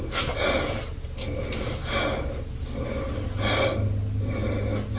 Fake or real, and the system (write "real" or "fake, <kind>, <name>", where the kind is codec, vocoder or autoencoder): real